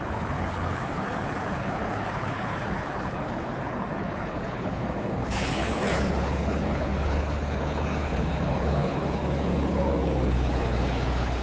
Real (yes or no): no